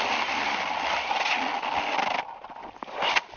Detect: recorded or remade recorded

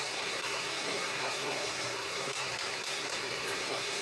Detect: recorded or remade remade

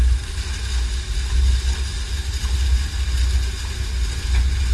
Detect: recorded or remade recorded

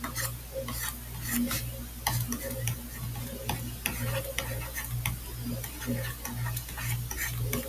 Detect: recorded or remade recorded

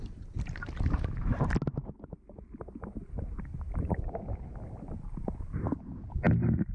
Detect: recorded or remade recorded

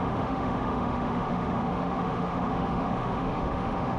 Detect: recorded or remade remade